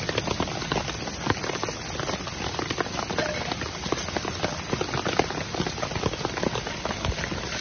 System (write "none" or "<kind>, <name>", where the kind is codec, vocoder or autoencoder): none